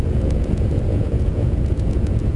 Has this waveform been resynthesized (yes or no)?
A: yes